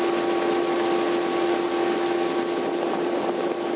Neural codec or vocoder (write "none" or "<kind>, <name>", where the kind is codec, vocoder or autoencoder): none